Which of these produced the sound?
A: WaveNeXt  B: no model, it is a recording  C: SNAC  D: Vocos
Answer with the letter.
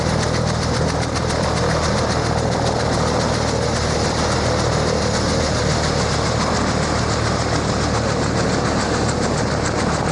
B